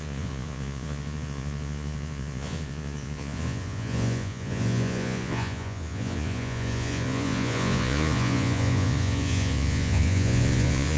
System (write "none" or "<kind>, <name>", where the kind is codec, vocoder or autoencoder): vocoder, Vocos